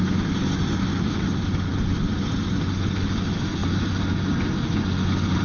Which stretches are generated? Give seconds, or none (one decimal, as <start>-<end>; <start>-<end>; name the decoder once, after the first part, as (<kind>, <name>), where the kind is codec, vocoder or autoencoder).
none